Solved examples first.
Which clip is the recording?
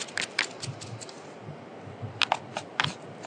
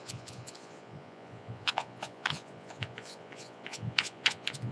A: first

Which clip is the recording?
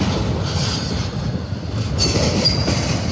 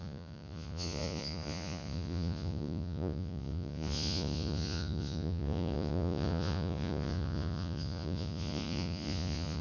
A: first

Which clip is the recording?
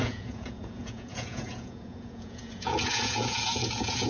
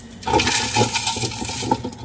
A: second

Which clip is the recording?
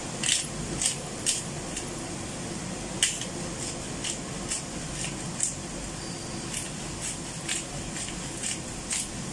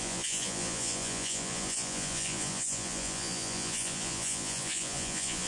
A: first